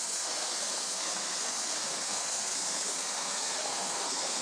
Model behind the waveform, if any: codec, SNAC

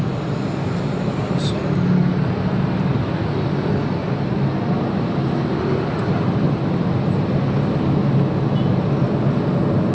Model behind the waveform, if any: none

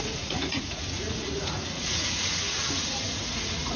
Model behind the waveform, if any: vocoder, Vocos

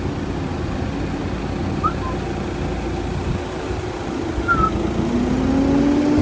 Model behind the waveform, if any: none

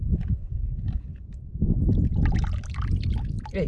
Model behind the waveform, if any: none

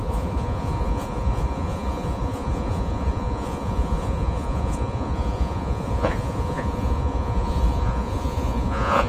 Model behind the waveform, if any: vocoder, Vocos